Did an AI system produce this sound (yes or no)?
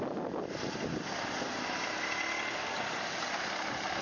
no